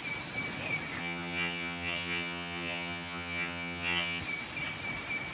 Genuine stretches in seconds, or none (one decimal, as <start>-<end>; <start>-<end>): 0.0-1.0; 4.2-5.3